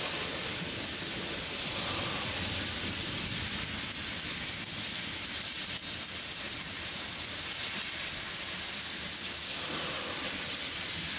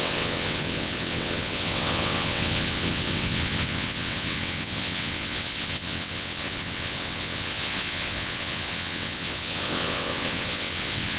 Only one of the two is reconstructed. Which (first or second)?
second